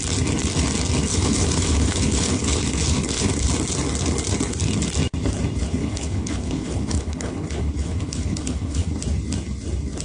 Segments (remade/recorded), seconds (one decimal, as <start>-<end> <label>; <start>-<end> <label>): 0.0-1.1 recorded; 1.1-3.3 remade; 3.3-5.8 recorded; 5.8-8.9 remade; 8.9-10.0 recorded